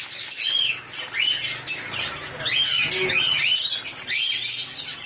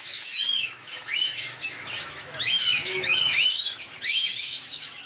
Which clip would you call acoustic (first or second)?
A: first